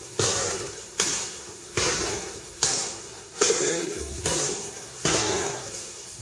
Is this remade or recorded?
remade